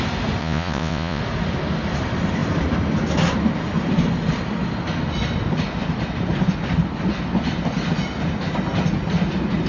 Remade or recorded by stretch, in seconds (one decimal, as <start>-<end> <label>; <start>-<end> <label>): 0.0-0.4 recorded; 0.4-1.2 remade; 1.2-9.7 recorded